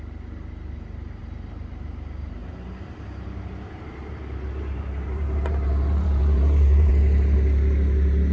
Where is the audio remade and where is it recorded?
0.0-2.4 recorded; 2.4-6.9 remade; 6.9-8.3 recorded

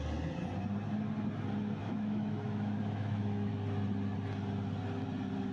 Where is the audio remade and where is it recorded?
0.0-1.8 recorded; 1.8-3.5 remade; 3.5-5.5 recorded

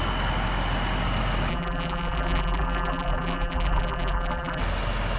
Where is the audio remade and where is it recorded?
0.0-1.5 recorded; 1.5-4.6 remade; 4.6-5.2 recorded

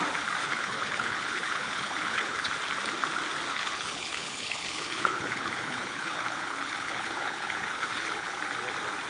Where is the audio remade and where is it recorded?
0.0-0.4 recorded; 0.4-2.5 remade; 2.5-3.5 recorded; 3.5-8.4 remade; 8.4-9.1 recorded

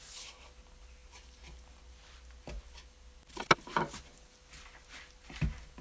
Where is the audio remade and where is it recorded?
0.0-5.8 recorded